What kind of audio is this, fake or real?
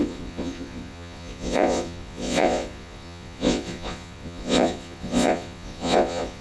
fake